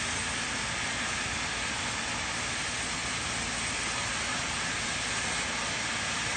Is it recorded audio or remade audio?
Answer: recorded